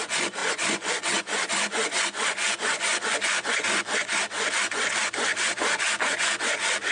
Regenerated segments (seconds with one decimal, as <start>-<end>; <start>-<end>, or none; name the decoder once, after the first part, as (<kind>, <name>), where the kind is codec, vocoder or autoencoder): 0.0-6.9 (vocoder, Vocos)